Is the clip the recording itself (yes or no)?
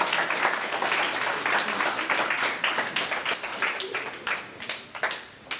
yes